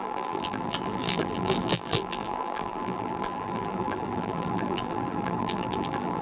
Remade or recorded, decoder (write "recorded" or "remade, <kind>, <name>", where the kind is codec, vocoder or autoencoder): remade, vocoder, BigVGAN v2